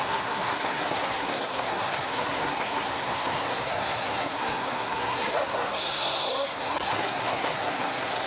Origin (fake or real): fake